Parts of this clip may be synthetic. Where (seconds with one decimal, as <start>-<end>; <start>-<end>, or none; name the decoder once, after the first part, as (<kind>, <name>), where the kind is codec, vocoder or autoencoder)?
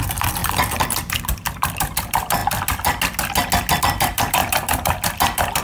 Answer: 0.0-2.4 (vocoder, BigVGAN v2); 3.8-5.6